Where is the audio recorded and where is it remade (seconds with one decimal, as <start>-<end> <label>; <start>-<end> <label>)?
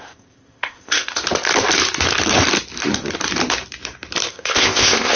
0.0-1.2 remade; 1.2-4.3 recorded; 4.3-5.2 remade